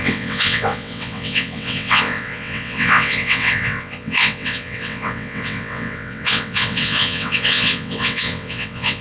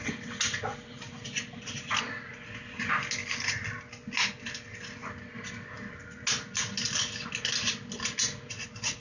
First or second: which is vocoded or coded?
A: first